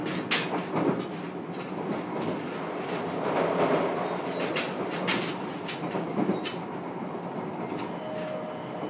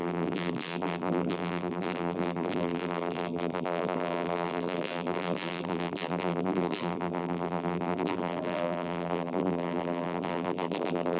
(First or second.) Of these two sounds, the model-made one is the second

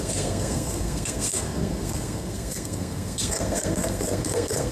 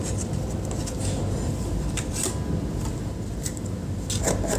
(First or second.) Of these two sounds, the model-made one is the first